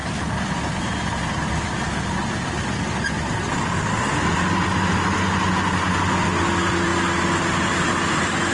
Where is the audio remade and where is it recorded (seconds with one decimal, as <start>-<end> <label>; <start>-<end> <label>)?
0.0-8.5 recorded